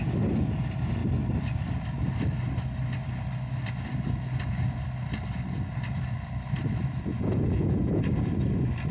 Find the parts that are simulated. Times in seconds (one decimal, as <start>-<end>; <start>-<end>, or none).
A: 7.1-8.0